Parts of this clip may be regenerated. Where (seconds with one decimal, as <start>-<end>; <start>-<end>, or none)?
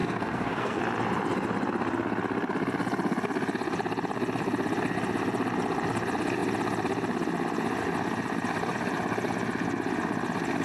0.0-0.8